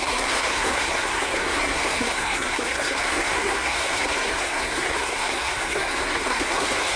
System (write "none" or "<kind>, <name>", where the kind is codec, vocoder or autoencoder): codec, SNAC